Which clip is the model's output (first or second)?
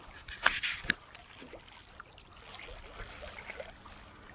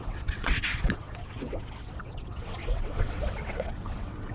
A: second